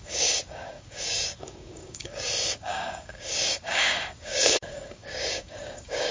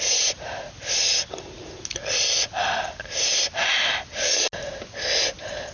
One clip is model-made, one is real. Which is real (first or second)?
second